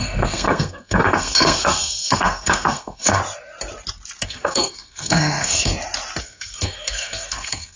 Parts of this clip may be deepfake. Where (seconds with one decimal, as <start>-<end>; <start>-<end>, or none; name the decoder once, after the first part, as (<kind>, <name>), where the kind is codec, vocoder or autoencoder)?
0.0-3.2 (codec, SNAC); 4.2-5.7; 6.2-7.8